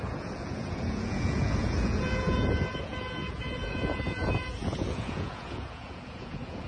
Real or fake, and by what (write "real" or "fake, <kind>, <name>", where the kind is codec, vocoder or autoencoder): fake, vocoder, Vocos